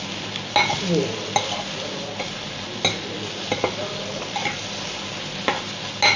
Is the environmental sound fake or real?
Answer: real